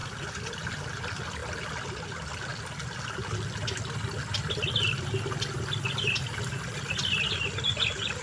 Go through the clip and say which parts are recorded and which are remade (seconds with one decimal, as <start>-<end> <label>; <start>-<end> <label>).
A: 0.0-8.2 recorded